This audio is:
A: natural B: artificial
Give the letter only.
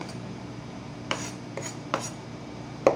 B